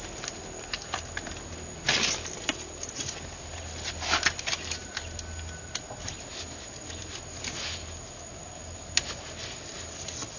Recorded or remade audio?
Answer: recorded